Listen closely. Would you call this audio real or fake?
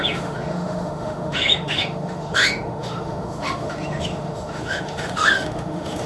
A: fake